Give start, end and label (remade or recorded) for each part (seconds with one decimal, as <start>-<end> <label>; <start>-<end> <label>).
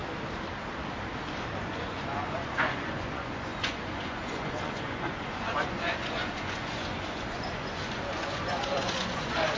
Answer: 0.0-1.6 recorded; 1.6-9.6 remade